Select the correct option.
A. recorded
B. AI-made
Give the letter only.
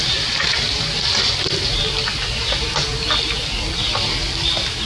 A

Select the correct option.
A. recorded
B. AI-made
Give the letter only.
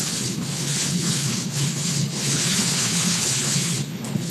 B